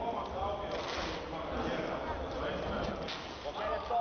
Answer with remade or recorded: recorded